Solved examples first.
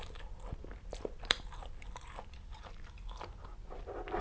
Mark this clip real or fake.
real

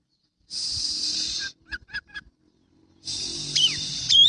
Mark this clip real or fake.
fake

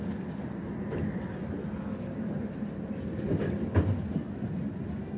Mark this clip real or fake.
real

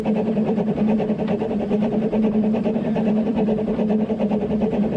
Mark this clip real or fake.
fake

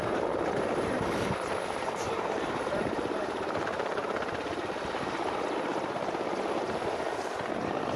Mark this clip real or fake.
fake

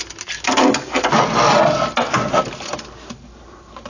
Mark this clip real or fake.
real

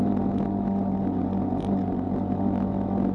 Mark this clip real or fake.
real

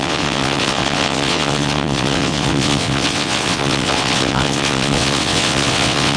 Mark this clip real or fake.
fake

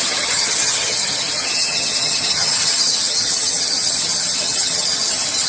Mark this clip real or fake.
fake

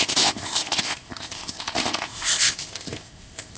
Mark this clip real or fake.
fake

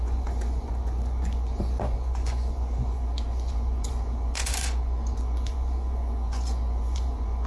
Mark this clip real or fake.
fake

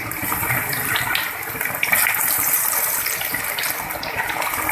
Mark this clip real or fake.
real